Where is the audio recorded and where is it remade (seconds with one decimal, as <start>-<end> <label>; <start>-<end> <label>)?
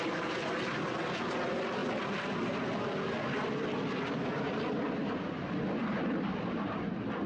0.0-7.3 recorded